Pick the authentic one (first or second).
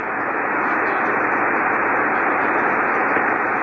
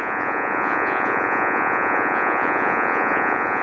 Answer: first